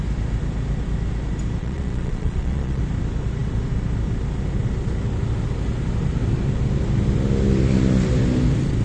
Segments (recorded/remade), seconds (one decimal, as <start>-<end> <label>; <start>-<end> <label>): 0.0-1.6 recorded; 1.6-2.8 remade; 2.8-8.8 recorded